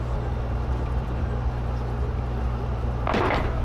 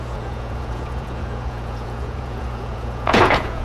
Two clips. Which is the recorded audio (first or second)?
first